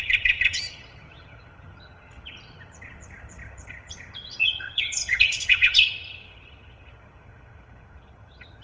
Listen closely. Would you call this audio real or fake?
fake